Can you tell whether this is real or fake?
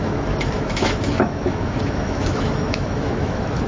fake